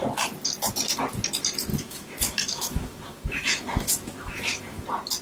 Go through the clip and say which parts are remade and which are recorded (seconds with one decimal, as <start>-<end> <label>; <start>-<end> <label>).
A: 0.0-1.7 recorded; 1.7-4.8 remade; 4.8-5.2 recorded